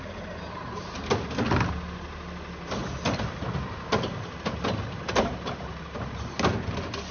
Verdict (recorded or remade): recorded